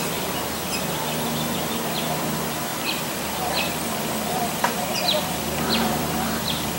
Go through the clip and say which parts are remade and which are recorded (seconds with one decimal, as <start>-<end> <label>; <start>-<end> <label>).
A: 0.0-2.7 recorded; 2.7-6.8 remade